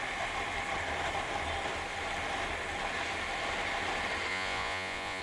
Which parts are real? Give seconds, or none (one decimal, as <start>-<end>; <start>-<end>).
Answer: 0.0-4.3

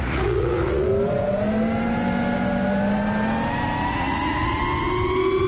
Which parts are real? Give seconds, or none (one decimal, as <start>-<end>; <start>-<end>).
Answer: 0.9-3.9; 4.6-5.5

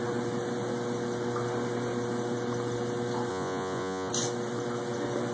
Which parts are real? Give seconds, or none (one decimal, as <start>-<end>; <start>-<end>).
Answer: 0.0-3.3; 4.1-5.3

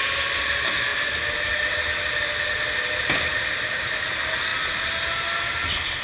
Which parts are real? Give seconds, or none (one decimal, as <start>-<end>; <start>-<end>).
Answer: 0.0-6.0

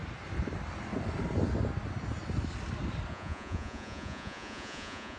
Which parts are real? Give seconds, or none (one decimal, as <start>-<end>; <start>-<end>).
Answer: 0.0-3.1

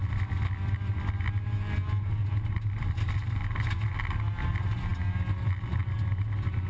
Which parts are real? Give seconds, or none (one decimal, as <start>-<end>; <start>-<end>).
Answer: 0.0-6.7